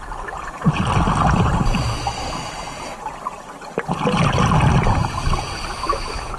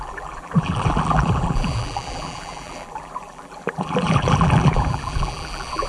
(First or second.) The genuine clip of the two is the first